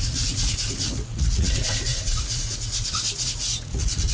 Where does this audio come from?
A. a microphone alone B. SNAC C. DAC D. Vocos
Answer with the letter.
D